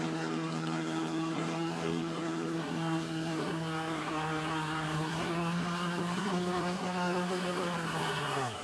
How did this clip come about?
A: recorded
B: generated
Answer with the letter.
B